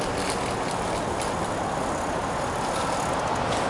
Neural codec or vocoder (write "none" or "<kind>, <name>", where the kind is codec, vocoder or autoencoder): none